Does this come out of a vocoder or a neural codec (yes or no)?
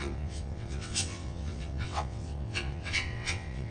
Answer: yes